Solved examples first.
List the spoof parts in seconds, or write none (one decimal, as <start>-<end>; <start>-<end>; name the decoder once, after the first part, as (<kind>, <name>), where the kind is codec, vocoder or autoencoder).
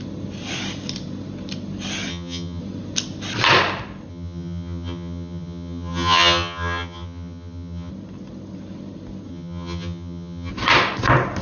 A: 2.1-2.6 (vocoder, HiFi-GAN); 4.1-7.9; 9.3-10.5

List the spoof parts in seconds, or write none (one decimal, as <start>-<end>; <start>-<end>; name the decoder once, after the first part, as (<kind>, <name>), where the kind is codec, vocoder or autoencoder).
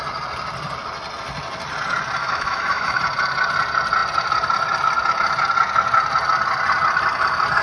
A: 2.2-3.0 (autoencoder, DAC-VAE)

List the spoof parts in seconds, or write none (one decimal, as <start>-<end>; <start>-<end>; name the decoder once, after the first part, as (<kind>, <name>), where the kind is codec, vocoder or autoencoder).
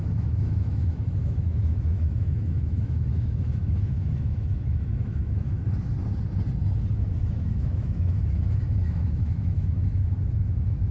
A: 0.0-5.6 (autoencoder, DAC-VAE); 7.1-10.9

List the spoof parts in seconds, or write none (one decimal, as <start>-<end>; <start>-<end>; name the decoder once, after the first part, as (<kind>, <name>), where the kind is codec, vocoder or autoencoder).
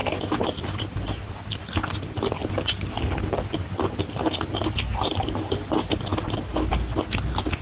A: 0.0-6.1 (vocoder, BigVGAN v2)